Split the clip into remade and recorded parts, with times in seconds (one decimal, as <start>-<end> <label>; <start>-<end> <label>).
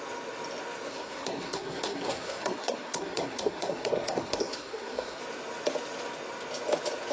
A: 0.0-0.9 recorded; 0.9-5.2 remade; 5.2-7.1 recorded